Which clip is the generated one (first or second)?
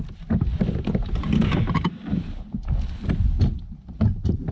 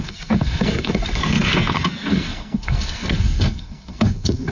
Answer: second